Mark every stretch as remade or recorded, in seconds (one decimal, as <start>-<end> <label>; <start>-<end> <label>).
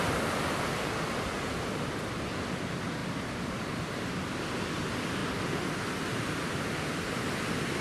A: 0.0-7.8 recorded